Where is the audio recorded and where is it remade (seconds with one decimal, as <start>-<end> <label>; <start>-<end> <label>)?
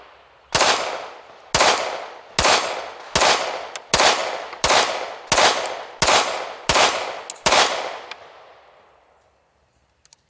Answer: 0.0-10.3 recorded